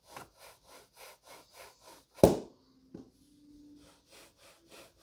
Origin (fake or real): real